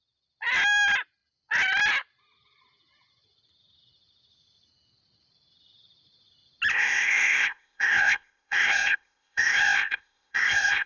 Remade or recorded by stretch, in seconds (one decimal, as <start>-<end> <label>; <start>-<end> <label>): 0.0-6.7 recorded; 6.7-10.9 remade

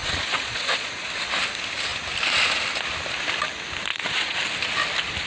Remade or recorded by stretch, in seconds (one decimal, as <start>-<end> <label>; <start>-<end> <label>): 0.0-1.1 remade; 1.1-3.9 recorded; 3.9-4.4 remade; 4.4-5.3 recorded

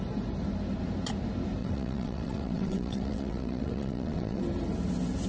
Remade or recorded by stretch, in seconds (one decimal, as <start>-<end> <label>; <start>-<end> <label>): 0.0-1.6 recorded; 1.6-4.4 remade; 4.4-5.3 recorded

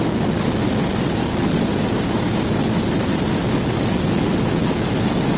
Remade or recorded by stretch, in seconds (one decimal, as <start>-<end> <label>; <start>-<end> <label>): 0.0-0.9 recorded; 0.9-3.9 remade; 3.9-5.4 recorded